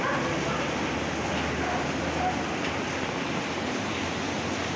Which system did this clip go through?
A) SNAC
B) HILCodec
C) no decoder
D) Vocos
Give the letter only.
C